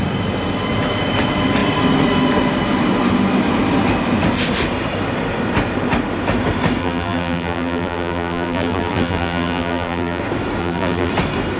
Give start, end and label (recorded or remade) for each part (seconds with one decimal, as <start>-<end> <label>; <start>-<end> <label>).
0.0-6.8 recorded; 6.8-10.2 remade; 10.2-10.6 recorded; 10.6-11.1 remade; 11.1-11.6 recorded